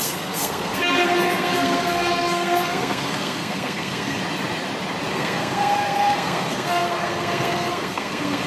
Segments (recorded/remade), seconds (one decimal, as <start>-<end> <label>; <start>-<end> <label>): 0.0-4.2 remade; 4.2-5.1 recorded; 5.1-8.5 remade